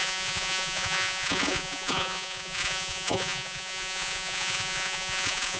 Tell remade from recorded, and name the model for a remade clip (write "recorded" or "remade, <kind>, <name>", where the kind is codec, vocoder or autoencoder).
remade, vocoder, Vocos